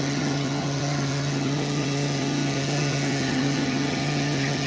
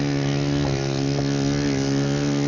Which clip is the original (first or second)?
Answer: second